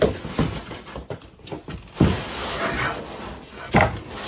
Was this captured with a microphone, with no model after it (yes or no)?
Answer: yes